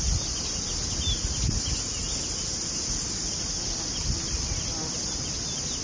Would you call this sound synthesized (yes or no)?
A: no